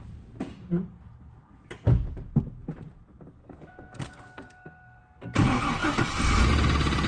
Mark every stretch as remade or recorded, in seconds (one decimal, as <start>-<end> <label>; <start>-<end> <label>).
0.0-3.4 recorded; 3.4-5.0 remade; 5.0-7.1 recorded